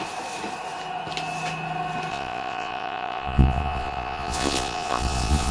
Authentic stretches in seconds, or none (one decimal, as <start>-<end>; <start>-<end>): 0.0-2.1